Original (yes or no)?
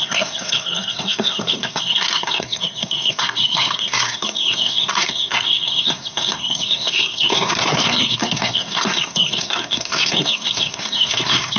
no